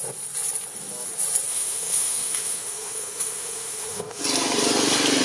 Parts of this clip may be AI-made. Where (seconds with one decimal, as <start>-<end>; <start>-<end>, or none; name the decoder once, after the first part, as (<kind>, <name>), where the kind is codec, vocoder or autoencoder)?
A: 1.5-4.2 (autoencoder, DAC-VAE)